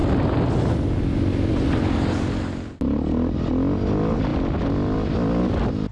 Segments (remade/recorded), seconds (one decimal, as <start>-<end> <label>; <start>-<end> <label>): 0.0-5.9 recorded